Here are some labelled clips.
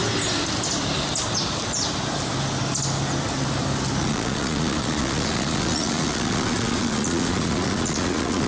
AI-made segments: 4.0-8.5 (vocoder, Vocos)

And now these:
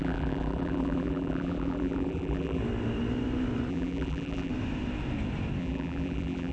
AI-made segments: 0.0-2.6 (vocoder, BigVGAN v2); 3.7-4.5; 5.6-6.5

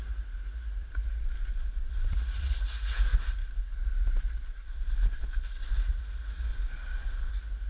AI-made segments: 0.0-1.2 (vocoder, Vocos); 1.9-3.1; 5.9-6.5; 7.3-7.7

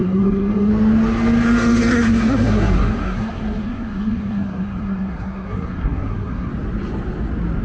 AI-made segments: 0.0-0.7 (codec, SNAC); 1.9-6.5

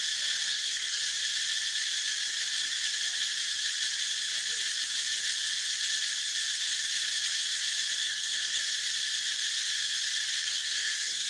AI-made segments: 0.5-1.0 (codec, SNAC); 8.0-8.6; 10.4-11.3

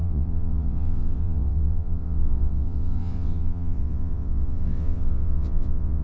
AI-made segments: 0.0-6.0 (vocoder, WaveNeXt)